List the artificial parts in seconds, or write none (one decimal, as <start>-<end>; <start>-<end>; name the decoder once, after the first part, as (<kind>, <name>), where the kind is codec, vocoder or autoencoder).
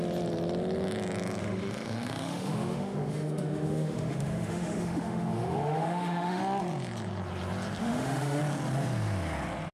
1.4-6.4 (autoencoder, DAC-VAE); 7.8-8.4